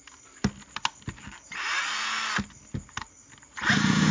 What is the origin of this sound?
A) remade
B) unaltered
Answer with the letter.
B